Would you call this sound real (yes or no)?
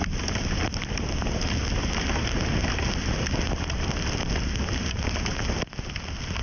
yes